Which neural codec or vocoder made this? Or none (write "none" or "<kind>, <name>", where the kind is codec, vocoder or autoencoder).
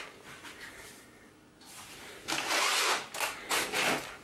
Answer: none